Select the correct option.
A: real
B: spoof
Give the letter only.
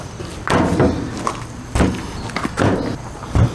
A